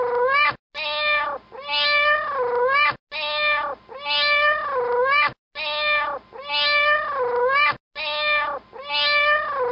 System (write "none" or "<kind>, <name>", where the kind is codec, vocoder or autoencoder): none